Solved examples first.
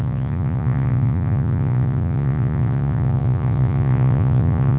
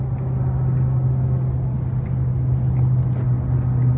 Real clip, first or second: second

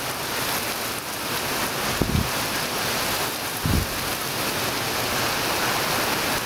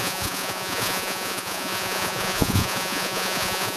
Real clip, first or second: first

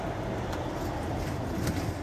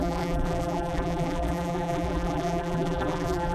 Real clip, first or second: first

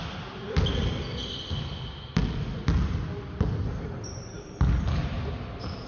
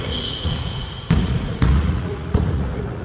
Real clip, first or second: first